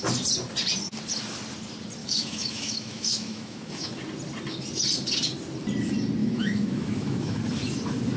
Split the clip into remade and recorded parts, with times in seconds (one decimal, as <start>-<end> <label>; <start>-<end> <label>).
0.0-2.0 recorded; 2.0-3.9 remade; 3.9-6.2 recorded; 6.2-7.4 remade; 7.4-8.2 recorded